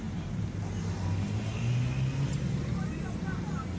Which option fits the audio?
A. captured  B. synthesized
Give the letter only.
A